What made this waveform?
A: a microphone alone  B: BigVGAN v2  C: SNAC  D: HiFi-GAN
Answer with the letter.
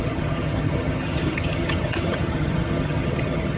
D